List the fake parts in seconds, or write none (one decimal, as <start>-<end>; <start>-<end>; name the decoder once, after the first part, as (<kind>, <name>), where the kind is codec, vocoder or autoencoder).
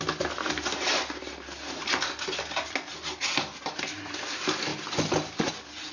none